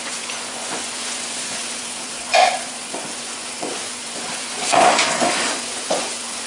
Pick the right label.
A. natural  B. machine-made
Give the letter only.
B